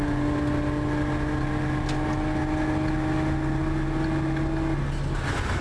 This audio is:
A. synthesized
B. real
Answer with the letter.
B